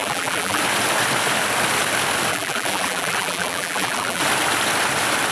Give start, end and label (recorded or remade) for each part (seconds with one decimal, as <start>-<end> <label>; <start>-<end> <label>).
0.0-0.6 remade; 0.6-2.3 recorded; 2.3-4.2 remade; 4.2-5.3 recorded